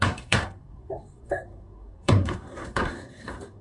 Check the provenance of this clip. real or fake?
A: fake